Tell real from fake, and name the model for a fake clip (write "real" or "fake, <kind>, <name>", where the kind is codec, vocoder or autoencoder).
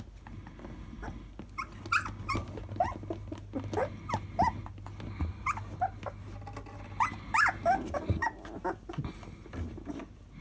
real